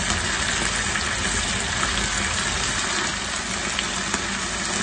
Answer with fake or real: real